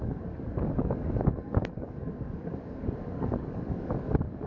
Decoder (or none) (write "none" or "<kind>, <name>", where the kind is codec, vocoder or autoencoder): codec, DAC